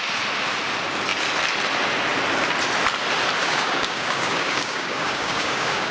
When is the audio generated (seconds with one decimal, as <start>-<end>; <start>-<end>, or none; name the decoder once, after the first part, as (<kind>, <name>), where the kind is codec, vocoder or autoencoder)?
3.4-5.9 (codec, DAC)

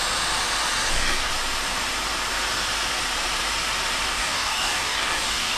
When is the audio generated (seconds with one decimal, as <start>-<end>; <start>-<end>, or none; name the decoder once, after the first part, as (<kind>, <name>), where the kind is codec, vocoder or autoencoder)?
0.9-1.3 (codec, DAC); 4.1-5.6

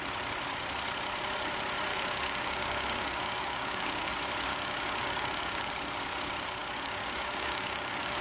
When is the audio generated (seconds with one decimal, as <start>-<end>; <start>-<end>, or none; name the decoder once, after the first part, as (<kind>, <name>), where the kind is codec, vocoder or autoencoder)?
1.9-4.1 (codec, DAC); 4.5-5.7; 6.6-8.2